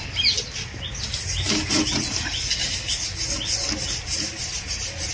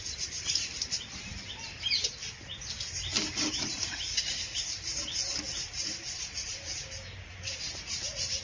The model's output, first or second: second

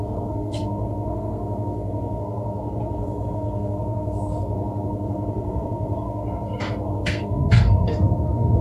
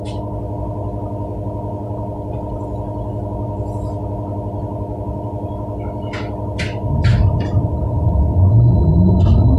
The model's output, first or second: first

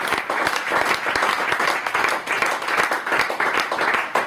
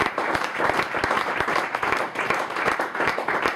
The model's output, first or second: second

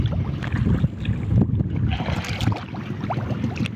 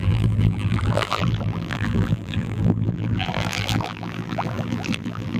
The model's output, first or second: second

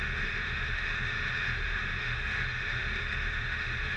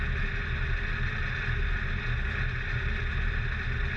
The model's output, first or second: first